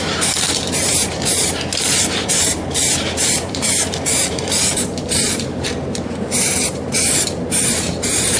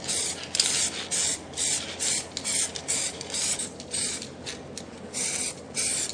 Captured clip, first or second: second